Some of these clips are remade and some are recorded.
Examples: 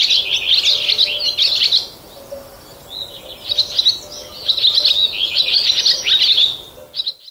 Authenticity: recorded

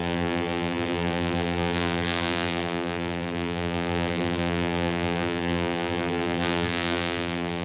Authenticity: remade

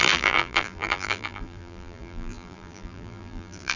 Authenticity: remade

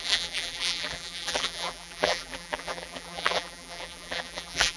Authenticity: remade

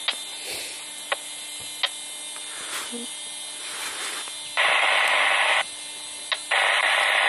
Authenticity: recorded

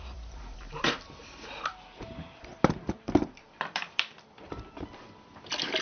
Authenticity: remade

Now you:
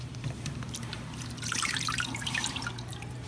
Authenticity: remade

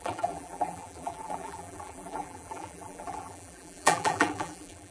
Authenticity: remade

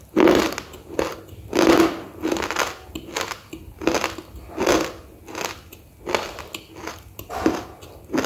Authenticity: recorded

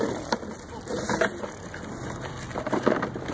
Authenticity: recorded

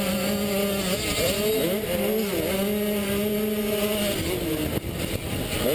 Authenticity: recorded